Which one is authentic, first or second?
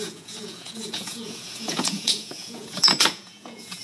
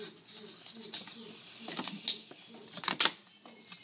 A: second